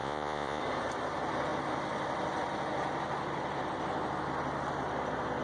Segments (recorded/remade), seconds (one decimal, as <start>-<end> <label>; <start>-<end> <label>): 0.0-0.6 remade; 0.6-5.4 recorded